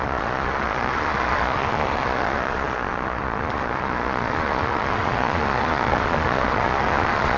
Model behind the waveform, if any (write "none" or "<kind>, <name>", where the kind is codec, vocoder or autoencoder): vocoder, Vocos